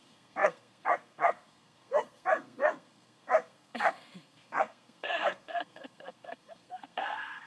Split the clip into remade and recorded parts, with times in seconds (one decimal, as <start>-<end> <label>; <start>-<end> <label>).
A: 0.0-7.5 remade